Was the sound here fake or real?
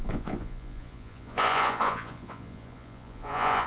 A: fake